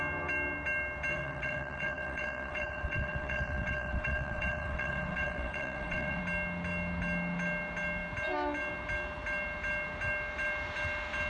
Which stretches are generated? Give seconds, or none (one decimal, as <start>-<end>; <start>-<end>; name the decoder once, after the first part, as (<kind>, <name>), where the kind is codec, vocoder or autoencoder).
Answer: 1.1-6.2 (vocoder, WaveNeXt)